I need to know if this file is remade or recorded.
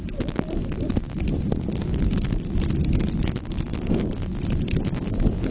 recorded